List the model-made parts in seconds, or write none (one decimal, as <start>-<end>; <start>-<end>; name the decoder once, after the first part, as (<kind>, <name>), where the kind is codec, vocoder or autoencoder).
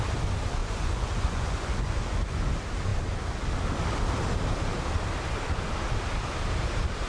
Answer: 0.6-2.5 (vocoder, Vocos)